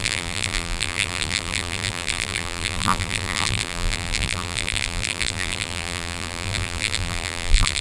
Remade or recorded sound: remade